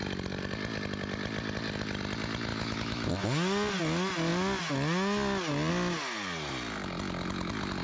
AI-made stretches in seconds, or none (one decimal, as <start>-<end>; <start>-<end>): 2.5-3.1